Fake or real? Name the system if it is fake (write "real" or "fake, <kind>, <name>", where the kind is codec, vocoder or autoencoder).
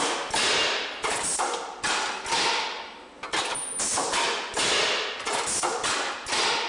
real